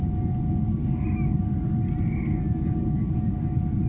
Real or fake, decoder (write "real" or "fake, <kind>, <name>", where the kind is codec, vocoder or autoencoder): real